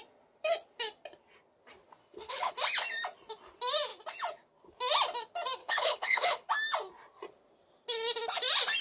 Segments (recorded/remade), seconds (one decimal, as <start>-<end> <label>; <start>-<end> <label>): 0.0-2.0 recorded; 2.0-2.5 remade; 2.5-5.6 recorded; 5.6-6.5 remade; 6.5-8.8 recorded

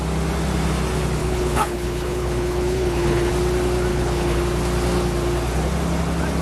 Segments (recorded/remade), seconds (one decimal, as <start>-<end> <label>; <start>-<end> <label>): 0.0-1.2 recorded; 1.2-3.3 remade; 3.3-3.9 recorded; 3.9-4.4 remade; 4.4-6.4 recorded

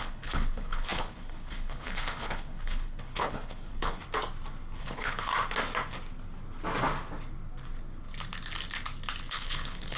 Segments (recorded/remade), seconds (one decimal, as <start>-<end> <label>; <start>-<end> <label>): 0.0-4.0 remade; 4.0-4.8 recorded; 4.8-5.3 remade; 5.3-9.3 recorded; 9.3-10.0 remade

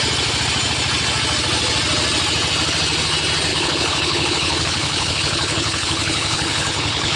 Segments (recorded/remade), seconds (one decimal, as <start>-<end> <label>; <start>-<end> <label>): 0.0-3.5 recorded; 3.5-7.2 remade

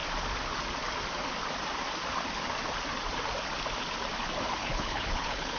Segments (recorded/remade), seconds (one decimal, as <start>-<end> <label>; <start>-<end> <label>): 0.0-4.6 recorded; 4.6-5.6 remade